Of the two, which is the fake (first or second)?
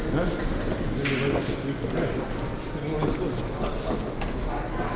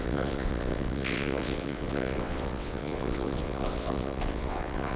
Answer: second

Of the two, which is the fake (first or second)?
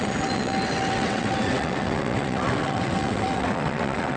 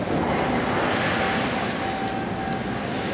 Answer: first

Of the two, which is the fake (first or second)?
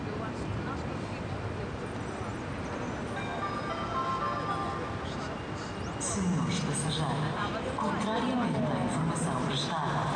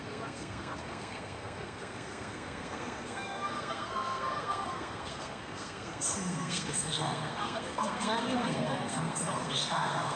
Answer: second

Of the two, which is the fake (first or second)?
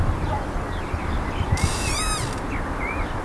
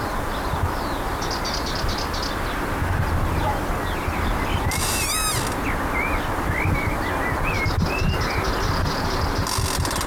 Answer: first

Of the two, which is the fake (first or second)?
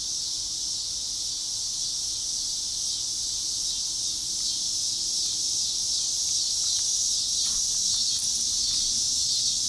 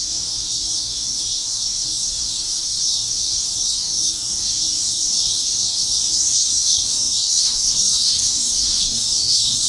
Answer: second